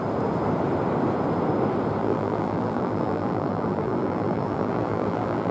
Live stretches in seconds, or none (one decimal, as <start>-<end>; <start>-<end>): 0.0-2.0